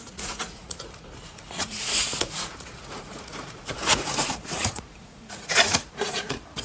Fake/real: fake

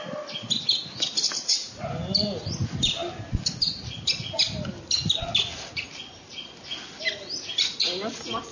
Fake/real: real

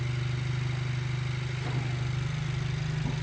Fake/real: real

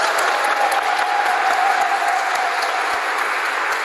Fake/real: fake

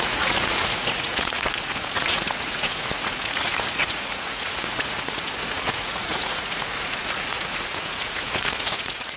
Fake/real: fake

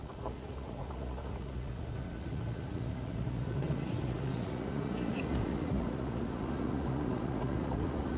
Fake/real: fake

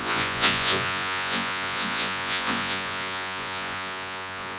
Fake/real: fake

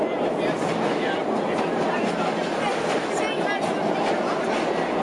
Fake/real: real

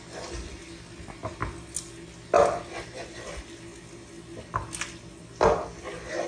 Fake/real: real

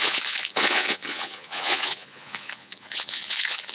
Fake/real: fake